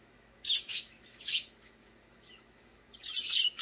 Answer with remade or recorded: remade